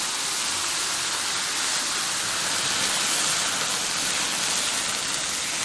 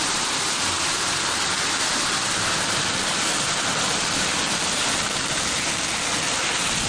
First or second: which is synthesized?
second